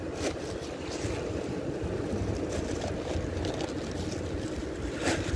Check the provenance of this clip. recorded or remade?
recorded